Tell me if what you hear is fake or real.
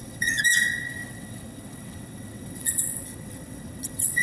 fake